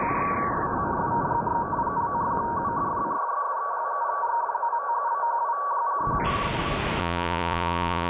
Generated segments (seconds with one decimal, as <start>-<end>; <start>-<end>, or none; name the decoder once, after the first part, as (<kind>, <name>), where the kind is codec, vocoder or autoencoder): 7.0-8.1 (vocoder, Vocos)